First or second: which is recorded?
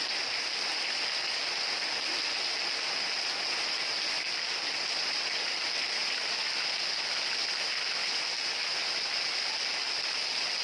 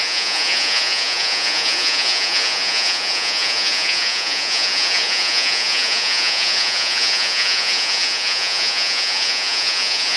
first